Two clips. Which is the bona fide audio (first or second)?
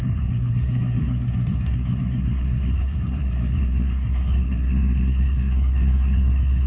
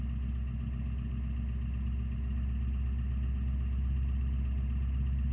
second